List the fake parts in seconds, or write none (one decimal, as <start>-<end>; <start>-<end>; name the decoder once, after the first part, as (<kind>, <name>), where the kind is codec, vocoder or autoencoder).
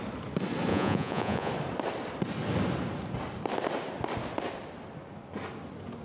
0.7-1.5 (vocoder, Vocos)